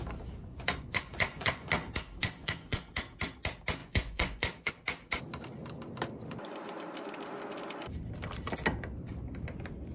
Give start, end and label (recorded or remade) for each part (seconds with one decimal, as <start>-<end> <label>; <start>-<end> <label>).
0.0-0.4 recorded; 0.4-1.7 remade; 1.7-2.2 recorded; 2.2-2.9 remade; 2.9-3.8 recorded; 3.8-4.7 remade; 4.7-9.9 recorded